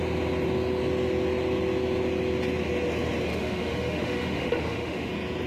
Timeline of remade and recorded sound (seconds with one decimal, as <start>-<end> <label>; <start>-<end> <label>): 0.0-3.3 recorded; 3.3-5.1 remade; 5.1-5.5 recorded